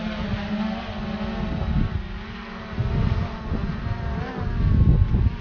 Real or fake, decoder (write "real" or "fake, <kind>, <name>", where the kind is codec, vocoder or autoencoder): real